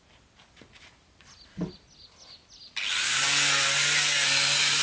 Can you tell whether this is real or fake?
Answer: real